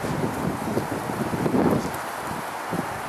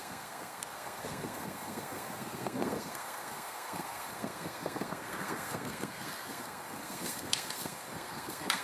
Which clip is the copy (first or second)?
second